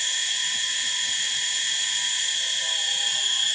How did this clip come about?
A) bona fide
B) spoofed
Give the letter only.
A